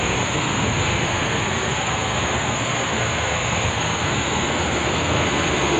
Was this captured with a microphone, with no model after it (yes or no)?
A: no